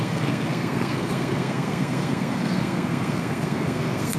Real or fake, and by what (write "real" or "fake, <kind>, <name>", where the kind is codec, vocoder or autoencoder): fake, codec, SNAC